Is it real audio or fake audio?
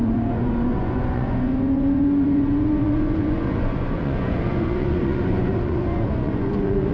fake